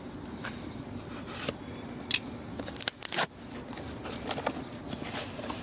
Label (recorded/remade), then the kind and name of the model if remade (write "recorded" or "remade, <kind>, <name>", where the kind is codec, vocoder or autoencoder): recorded